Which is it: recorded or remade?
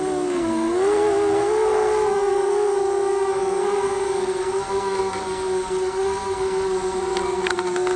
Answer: remade